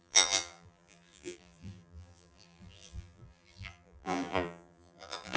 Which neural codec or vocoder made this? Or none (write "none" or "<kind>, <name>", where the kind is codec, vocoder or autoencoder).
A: vocoder, BigVGAN v2